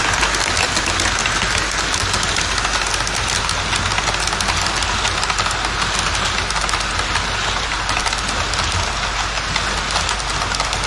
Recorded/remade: recorded